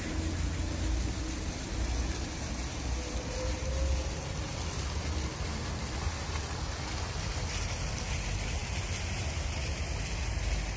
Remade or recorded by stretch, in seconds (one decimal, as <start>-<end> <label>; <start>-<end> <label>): 0.0-10.8 recorded

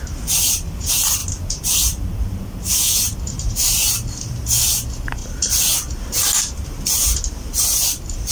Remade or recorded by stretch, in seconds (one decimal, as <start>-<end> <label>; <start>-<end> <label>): 0.0-8.3 remade

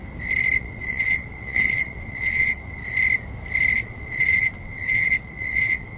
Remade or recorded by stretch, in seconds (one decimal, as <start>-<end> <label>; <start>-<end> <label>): 0.0-0.6 recorded; 0.6-2.8 remade; 2.8-3.8 recorded; 3.8-6.0 remade

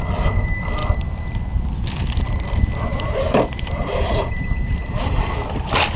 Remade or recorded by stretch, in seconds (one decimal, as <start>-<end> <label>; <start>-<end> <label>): 0.0-2.9 recorded; 2.9-5.3 remade; 5.3-6.0 recorded

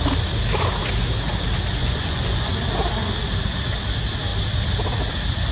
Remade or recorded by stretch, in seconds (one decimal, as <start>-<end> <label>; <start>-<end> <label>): 0.0-1.8 recorded; 1.8-2.5 remade; 2.5-5.5 recorded